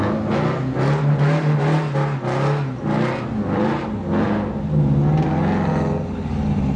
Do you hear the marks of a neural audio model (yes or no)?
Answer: no